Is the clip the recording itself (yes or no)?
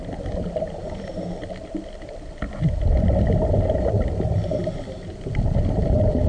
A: yes